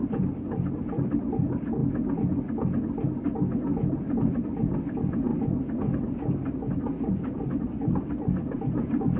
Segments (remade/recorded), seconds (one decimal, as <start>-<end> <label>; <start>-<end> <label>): 0.0-1.8 remade; 1.8-3.2 recorded; 3.2-3.7 remade; 3.7-4.2 recorded; 4.2-5.3 remade; 5.3-7.1 recorded; 7.1-9.2 remade